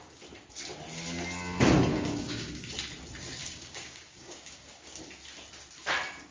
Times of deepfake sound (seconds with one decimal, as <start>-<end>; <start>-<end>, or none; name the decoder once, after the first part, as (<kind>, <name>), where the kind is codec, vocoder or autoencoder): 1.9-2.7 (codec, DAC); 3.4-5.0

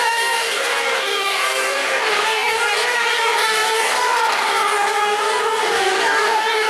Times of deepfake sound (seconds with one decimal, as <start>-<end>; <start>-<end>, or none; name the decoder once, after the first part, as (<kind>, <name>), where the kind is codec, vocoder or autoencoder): 0.0-6.7 (codec, DAC)

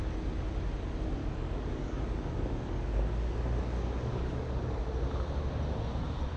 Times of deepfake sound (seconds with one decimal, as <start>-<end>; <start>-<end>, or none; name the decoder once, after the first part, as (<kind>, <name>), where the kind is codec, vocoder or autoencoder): 1.2-4.8 (codec, DAC)